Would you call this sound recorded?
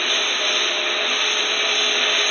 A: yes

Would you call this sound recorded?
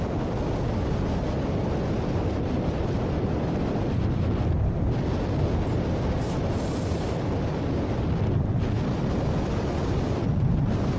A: yes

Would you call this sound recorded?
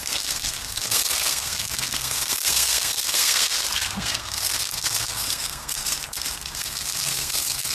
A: no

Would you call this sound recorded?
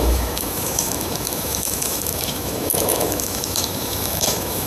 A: no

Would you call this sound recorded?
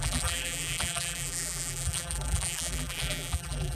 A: no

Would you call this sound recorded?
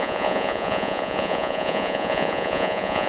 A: no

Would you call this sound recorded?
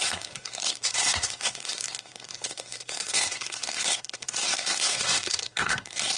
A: no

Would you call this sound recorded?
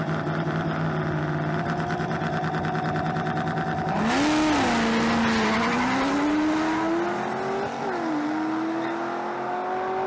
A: yes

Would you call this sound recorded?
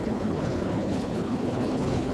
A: no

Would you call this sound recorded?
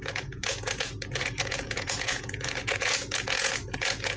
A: no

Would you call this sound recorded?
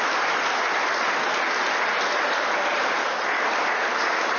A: yes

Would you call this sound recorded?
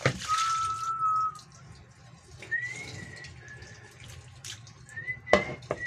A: yes